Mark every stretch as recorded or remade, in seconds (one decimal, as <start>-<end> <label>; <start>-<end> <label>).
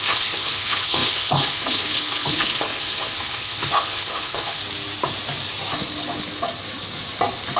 0.0-4.6 remade; 4.6-7.6 recorded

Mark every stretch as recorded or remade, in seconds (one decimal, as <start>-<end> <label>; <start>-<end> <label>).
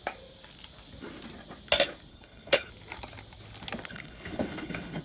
0.0-2.1 recorded; 2.1-2.7 remade; 2.7-3.9 recorded; 3.9-5.0 remade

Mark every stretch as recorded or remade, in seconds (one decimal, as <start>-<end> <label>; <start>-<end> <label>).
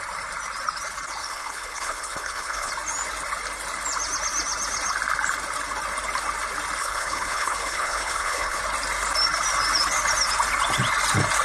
0.0-1.2 recorded; 1.2-2.7 remade; 2.7-6.8 recorded; 6.8-8.6 remade; 8.6-11.4 recorded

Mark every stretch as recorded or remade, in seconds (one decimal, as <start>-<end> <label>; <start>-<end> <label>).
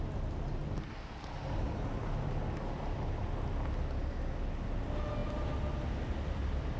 0.0-6.8 recorded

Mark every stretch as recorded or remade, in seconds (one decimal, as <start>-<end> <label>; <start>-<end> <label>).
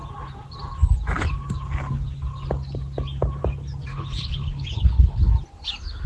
0.0-3.9 recorded; 3.9-5.2 remade; 5.2-6.1 recorded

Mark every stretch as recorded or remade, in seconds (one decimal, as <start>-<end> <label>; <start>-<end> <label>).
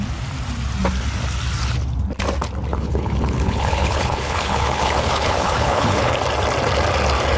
0.0-2.7 recorded; 2.7-6.1 remade; 6.1-7.4 recorded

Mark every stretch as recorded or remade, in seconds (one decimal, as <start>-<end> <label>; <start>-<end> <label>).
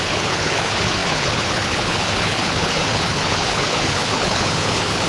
0.0-5.1 remade